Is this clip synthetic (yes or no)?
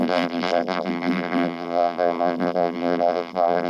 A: yes